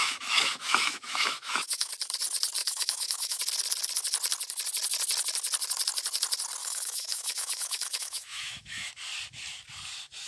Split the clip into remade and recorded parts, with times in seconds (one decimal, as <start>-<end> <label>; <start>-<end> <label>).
0.0-1.9 remade; 1.9-2.6 recorded; 2.6-3.4 remade; 3.4-6.6 recorded; 6.6-8.9 remade; 8.9-10.3 recorded